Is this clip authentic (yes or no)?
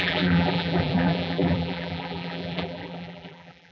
no